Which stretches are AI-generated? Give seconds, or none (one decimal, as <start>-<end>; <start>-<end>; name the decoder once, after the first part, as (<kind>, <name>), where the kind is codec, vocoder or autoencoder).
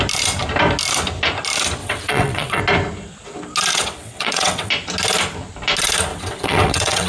1.8-2.6 (vocoder, WaveNeXt); 3.7-4.7; 6.1-7.1